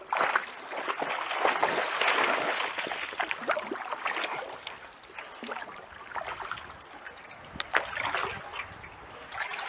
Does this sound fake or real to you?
real